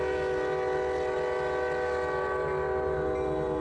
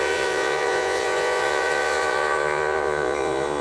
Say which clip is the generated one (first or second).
second